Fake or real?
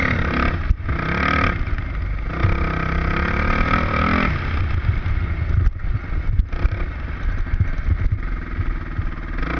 real